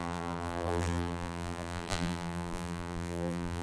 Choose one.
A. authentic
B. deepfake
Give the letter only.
B